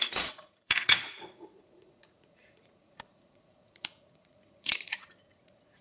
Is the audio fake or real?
fake